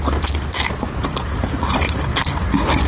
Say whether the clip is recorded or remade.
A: recorded